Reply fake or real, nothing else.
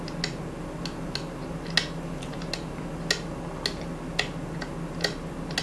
real